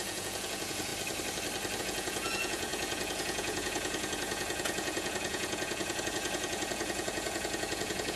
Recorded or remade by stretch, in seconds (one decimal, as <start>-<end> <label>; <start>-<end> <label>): 0.0-0.9 remade; 0.9-1.8 recorded; 1.8-8.2 remade